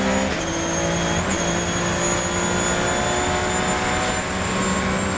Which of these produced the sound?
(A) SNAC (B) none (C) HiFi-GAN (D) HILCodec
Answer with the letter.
B